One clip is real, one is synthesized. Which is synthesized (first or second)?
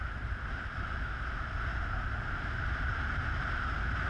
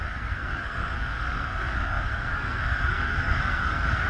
second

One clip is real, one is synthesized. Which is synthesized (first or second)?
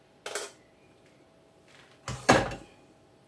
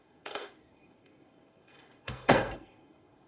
second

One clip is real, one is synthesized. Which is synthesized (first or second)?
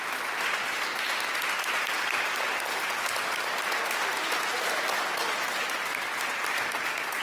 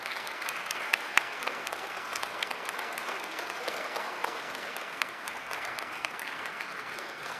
second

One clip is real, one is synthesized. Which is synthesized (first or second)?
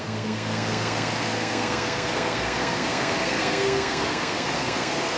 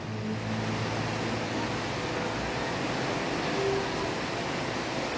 first